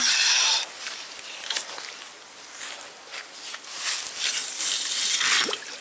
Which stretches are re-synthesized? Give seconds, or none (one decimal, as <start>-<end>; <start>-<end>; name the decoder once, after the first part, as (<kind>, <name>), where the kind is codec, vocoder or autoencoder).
none